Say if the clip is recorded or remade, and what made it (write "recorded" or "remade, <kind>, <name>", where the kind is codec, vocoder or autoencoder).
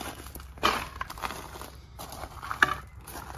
recorded